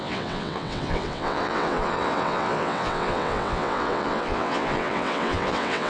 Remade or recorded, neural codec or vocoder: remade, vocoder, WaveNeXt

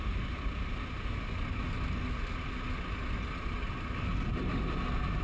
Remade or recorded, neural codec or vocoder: recorded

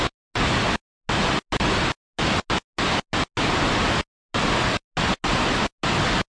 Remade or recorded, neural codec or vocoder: recorded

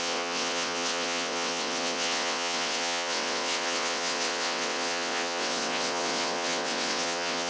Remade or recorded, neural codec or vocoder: remade, vocoder, WaveNeXt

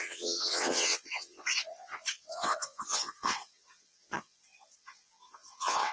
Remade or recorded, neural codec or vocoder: remade, vocoder, WaveNeXt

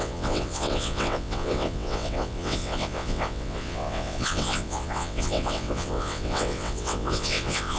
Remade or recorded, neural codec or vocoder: remade, vocoder, WaveNeXt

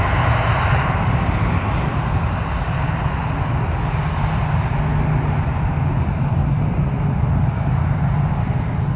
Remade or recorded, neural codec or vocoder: recorded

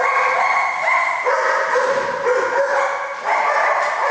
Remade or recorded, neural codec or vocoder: recorded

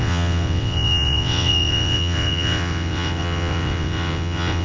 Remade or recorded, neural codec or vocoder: remade, vocoder, WaveNeXt